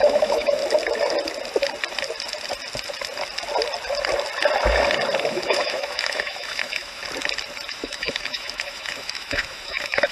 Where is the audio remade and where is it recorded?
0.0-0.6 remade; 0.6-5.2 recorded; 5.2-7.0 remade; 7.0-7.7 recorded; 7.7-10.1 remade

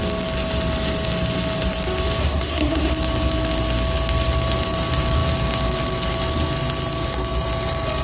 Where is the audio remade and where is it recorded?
0.0-2.2 recorded; 2.2-2.9 remade; 2.9-8.0 recorded

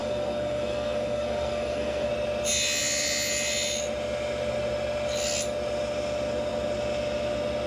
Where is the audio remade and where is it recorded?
0.0-2.1 remade; 2.1-7.7 recorded

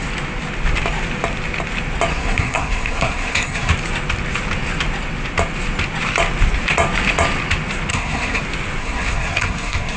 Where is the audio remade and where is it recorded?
0.0-2.1 recorded; 2.1-3.7 remade; 3.7-7.9 recorded; 7.9-8.4 remade; 8.4-8.8 recorded; 8.8-10.0 remade